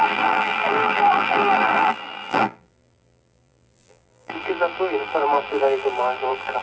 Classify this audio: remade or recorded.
remade